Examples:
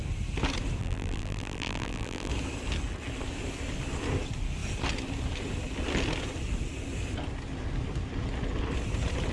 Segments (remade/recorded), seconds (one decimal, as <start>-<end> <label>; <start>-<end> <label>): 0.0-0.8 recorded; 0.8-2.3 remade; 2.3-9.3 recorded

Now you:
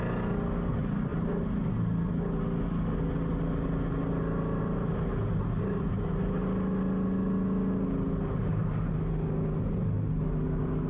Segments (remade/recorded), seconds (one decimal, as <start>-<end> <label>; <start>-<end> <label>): 0.0-10.9 recorded

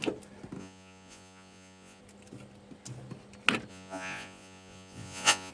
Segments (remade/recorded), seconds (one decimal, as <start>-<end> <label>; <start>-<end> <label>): 0.0-0.6 recorded; 0.6-2.0 remade; 2.0-3.7 recorded; 3.7-5.5 remade

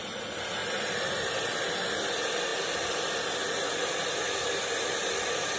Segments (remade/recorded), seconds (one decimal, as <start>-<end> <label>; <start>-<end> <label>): 0.0-0.6 recorded; 0.6-1.5 remade; 1.5-5.6 recorded